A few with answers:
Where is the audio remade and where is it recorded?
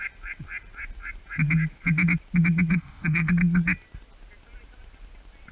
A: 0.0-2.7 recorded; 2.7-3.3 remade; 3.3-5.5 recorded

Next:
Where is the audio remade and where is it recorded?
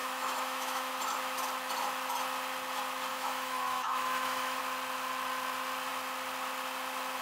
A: 0.0-0.9 remade; 0.9-3.1 recorded; 3.1-4.6 remade; 4.6-7.2 recorded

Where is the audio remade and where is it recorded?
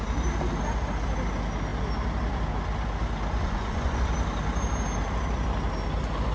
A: 0.0-3.4 recorded; 3.4-4.1 remade; 4.1-6.3 recorded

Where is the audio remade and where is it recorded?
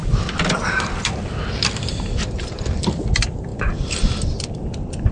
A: 0.0-5.1 recorded